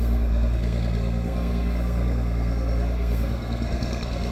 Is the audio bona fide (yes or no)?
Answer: no